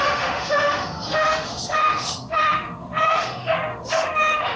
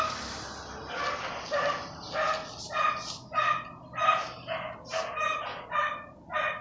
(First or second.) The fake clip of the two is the first